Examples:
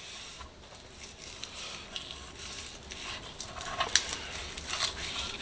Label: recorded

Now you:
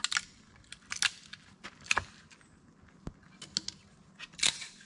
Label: recorded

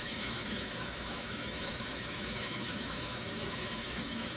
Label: remade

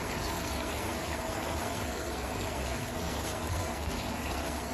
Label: remade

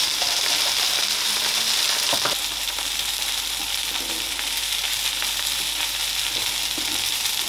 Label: remade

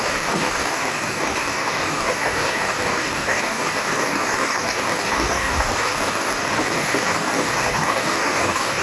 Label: remade